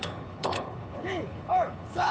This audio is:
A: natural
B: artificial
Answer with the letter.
B